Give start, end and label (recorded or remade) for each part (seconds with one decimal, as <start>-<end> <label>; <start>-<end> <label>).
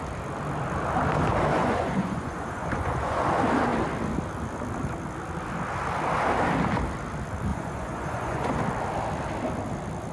0.0-1.5 recorded; 1.5-3.2 remade; 3.2-7.5 recorded; 7.5-8.6 remade; 8.6-10.1 recorded